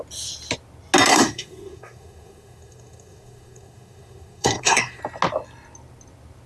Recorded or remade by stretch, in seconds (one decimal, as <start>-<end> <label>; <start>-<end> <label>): 0.0-1.1 recorded; 1.1-5.0 remade; 5.0-6.5 recorded